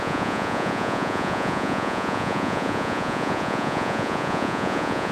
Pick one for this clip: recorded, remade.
remade